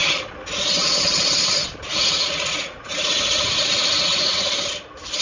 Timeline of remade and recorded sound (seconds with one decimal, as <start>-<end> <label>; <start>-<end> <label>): 0.0-1.9 recorded; 1.9-4.5 remade; 4.5-5.2 recorded